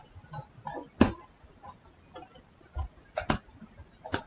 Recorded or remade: recorded